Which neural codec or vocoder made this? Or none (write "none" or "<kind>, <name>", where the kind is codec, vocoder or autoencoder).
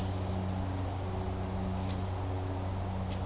none